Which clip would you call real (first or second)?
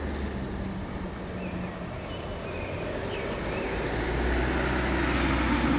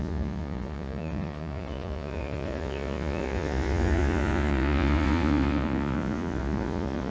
first